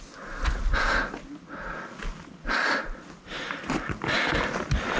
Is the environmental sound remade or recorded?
recorded